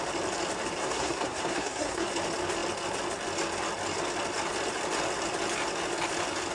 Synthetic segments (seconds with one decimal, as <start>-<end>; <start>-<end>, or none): 0.8-2.1